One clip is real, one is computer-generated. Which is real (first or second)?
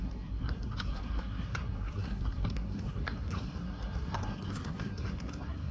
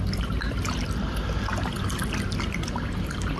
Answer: second